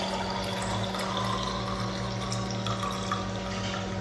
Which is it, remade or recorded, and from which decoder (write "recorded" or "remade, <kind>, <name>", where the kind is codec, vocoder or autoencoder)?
recorded